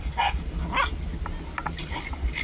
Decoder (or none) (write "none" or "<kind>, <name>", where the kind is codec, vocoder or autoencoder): none